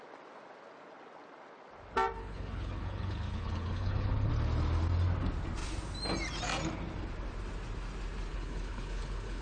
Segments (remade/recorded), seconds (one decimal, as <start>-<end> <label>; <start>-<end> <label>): 0.0-2.2 recorded; 2.2-4.3 remade; 4.3-8.3 recorded; 8.3-9.4 remade